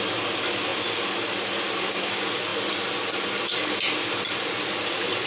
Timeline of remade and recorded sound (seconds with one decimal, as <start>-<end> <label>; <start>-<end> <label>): 0.0-5.3 recorded